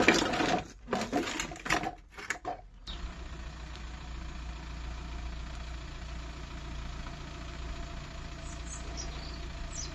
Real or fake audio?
real